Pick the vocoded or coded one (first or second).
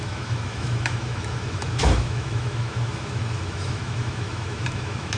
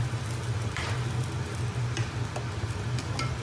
first